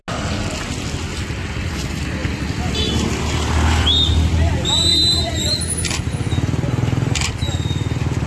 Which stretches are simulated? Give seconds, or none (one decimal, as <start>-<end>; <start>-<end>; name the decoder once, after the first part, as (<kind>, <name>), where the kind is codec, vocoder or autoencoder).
2.2-4.5 (vocoder, BigVGAN v2); 4.9-5.5